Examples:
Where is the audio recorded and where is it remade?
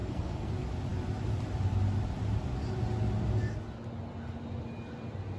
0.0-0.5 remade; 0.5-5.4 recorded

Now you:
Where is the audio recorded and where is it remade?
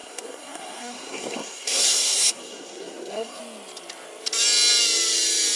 0.0-3.4 remade; 3.4-5.6 recorded